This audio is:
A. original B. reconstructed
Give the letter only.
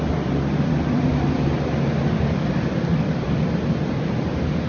A